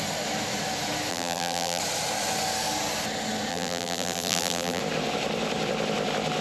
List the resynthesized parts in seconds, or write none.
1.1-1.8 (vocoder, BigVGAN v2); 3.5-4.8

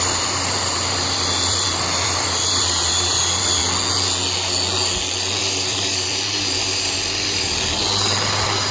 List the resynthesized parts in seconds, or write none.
0.0-3.6 (vocoder, BigVGAN v2); 5.4-8.7

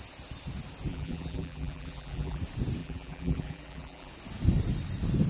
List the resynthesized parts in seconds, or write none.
0.9-2.4 (vocoder, BigVGAN v2); 2.8-4.1

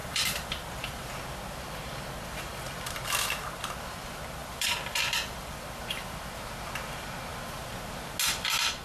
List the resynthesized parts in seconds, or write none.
0.0-1.1 (vocoder, BigVGAN v2); 4.4-5.6

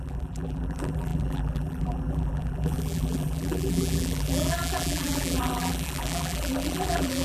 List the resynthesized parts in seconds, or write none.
0.0-7.2 (vocoder, BigVGAN v2)

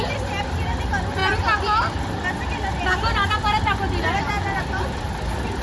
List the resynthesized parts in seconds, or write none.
none